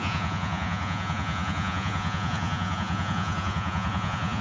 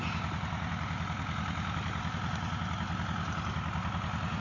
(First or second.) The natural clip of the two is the second